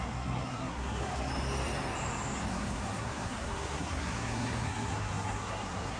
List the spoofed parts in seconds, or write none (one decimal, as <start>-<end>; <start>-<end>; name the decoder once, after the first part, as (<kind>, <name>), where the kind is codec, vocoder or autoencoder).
0.0-1.3 (codec, SNAC); 2.5-6.0